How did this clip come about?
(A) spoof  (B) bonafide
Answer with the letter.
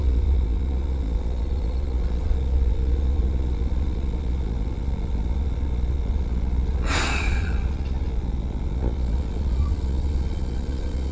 A